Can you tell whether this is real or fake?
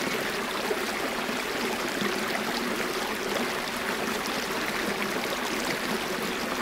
real